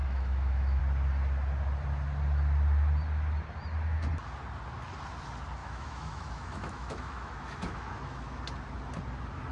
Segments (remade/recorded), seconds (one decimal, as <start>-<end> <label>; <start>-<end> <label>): 0.0-0.8 remade; 0.8-5.6 recorded; 5.6-8.4 remade; 8.4-9.5 recorded